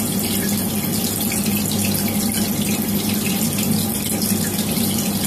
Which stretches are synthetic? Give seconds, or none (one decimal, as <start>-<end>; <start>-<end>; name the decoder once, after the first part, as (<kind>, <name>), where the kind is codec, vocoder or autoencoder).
none